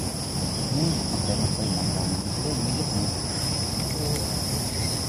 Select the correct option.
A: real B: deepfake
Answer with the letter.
A